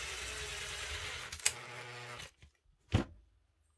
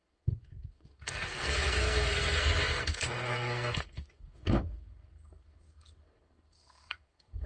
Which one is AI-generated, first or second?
second